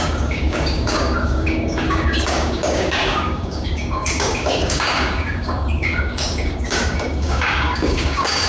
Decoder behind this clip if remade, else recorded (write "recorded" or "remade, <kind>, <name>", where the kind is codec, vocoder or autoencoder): remade, codec, DAC